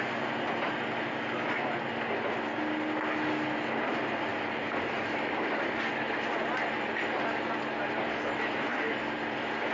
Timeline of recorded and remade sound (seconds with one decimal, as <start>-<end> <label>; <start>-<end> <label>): 0.0-4.3 recorded; 4.3-5.9 remade; 5.9-8.7 recorded; 8.7-9.7 remade